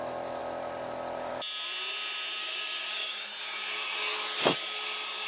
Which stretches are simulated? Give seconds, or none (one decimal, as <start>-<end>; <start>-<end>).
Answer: 2.4-3.3